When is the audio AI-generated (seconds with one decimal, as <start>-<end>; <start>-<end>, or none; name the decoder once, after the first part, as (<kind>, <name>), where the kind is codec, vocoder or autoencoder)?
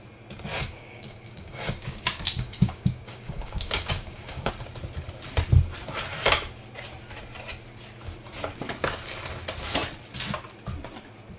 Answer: 0.5-4.5 (codec, DAC)